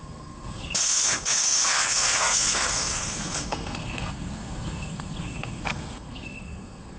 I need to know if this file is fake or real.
fake